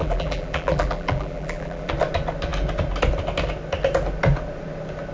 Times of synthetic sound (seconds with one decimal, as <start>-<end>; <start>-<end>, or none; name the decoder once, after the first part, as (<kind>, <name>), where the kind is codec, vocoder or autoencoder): 0.0-1.9 (vocoder, BigVGAN v2)